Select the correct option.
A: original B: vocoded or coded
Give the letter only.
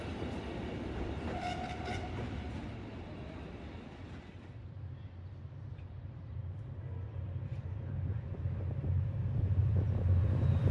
B